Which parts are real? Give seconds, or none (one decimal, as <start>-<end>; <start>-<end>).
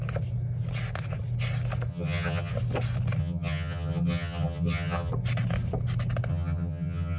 0.0-1.9; 2.5-3.2; 5.1-6.3